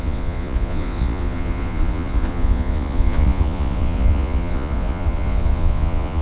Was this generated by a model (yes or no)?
yes